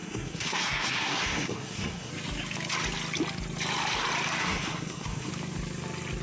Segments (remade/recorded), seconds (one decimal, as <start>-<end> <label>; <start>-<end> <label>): 0.0-2.1 remade; 2.1-4.4 recorded; 4.4-5.3 remade; 5.3-6.2 recorded